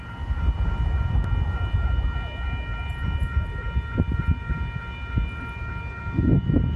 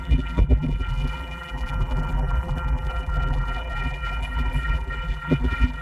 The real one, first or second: first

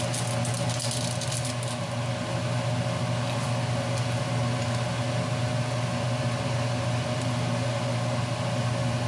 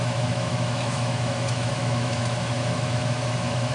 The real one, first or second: first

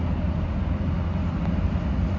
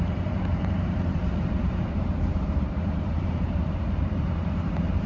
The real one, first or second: first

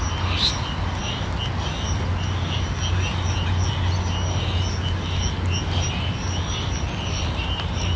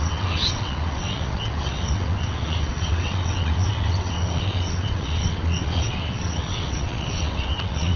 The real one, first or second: first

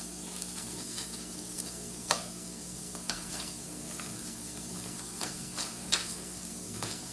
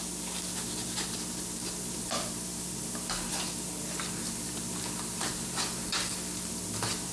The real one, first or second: second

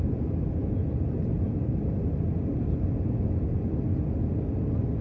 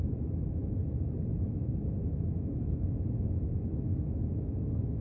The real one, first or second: first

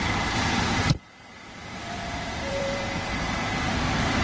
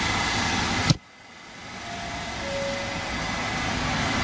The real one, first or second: second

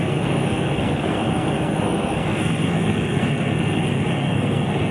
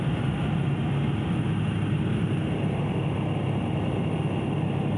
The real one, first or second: second